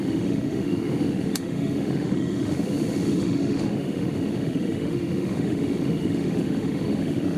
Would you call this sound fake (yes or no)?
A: yes